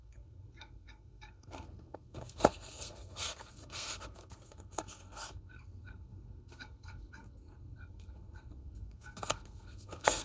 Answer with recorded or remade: remade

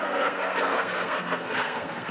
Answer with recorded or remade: remade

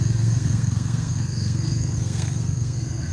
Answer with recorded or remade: remade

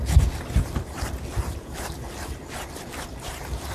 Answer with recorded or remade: recorded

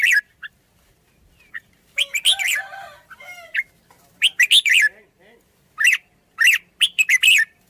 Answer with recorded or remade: recorded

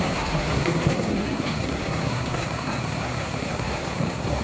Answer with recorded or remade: remade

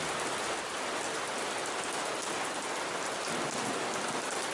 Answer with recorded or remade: recorded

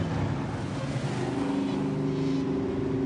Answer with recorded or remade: recorded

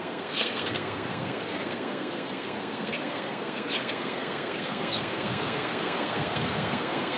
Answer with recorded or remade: remade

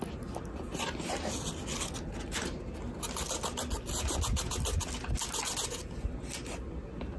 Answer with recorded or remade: recorded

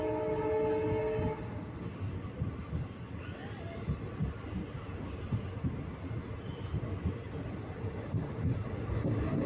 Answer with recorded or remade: recorded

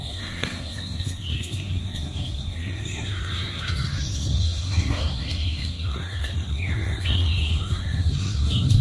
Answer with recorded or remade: remade